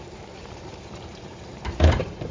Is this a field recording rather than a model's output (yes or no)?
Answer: no